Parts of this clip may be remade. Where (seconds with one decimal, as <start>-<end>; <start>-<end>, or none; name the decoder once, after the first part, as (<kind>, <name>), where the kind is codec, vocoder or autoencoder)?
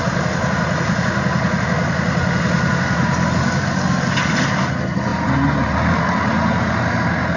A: none